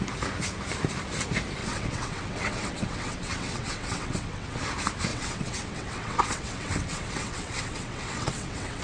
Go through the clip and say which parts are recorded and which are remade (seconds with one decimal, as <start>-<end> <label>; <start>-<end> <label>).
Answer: 0.0-1.6 recorded; 1.6-4.6 remade; 4.6-5.1 recorded; 5.1-8.8 remade